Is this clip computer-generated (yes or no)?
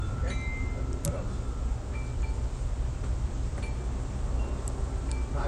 no